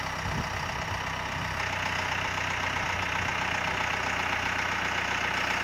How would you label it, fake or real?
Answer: real